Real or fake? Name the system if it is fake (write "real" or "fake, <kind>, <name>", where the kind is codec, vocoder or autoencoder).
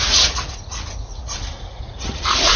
fake, vocoder, Vocos